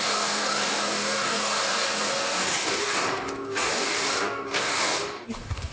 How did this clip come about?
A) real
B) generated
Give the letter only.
B